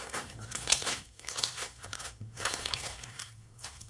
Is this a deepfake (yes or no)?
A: yes